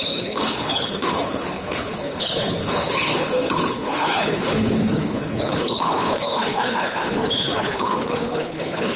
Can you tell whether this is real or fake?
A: fake